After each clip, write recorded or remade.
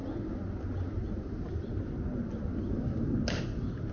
recorded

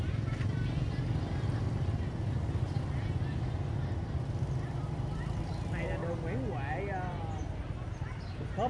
recorded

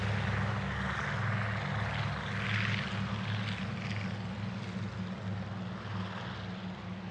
recorded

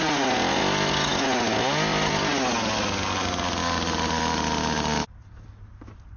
recorded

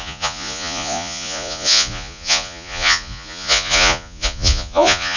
remade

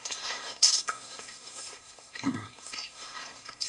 remade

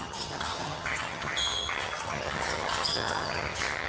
remade